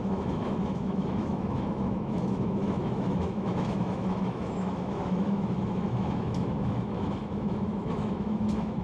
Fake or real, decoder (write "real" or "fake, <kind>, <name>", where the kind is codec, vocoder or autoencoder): fake, autoencoder, DAC-VAE